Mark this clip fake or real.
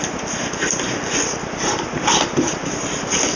real